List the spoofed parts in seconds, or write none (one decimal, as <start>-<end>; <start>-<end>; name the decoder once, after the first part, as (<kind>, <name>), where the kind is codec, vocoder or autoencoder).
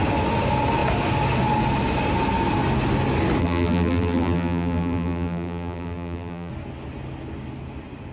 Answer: 3.4-6.5 (vocoder, BigVGAN v2)